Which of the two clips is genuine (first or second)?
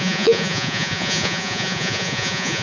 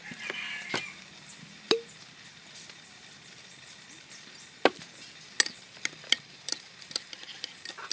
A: second